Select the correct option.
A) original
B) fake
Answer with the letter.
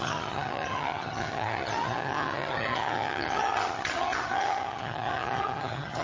B